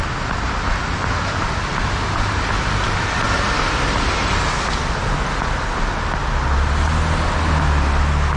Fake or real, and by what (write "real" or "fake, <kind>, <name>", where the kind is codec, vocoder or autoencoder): real